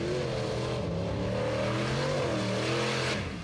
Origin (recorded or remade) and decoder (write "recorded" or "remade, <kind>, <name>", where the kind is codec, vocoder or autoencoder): recorded